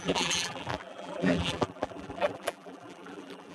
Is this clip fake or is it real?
fake